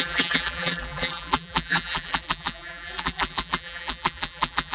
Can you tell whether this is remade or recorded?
remade